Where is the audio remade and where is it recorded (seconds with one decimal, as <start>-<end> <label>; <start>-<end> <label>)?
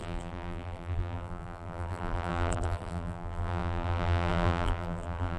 0.0-5.4 remade